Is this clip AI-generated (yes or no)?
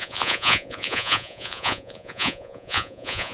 yes